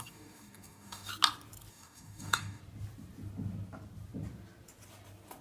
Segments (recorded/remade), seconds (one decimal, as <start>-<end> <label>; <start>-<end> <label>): 0.0-1.1 remade; 1.1-1.7 recorded; 1.7-2.6 remade; 2.6-5.4 recorded